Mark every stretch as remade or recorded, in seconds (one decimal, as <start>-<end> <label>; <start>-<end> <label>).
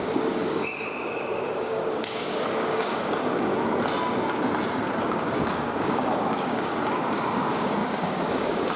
0.0-3.5 remade; 3.5-5.0 recorded; 5.0-7.8 remade; 7.8-8.3 recorded; 8.3-8.8 remade